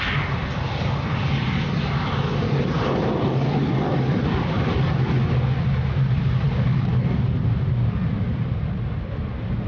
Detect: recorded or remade recorded